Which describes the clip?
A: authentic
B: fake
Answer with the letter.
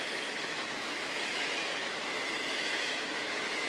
B